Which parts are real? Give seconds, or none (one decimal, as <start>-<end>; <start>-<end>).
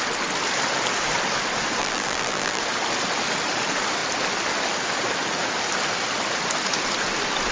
0.0-1.8; 2.6-7.5